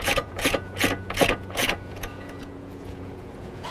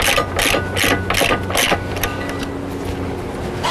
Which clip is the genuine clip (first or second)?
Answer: second